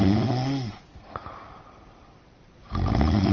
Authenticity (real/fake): real